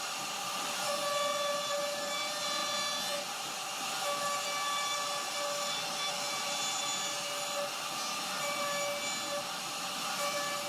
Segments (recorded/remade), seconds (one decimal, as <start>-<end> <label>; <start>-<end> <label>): 0.0-10.7 recorded